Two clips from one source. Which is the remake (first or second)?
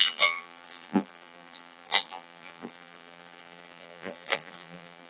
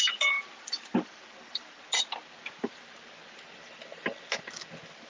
first